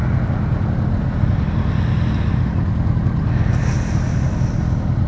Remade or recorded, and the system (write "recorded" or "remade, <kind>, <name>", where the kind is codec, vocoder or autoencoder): recorded